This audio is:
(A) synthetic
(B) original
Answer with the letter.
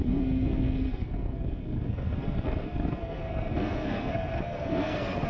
A